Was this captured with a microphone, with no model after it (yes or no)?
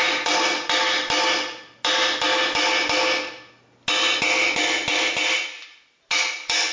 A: yes